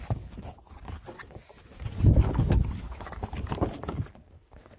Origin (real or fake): fake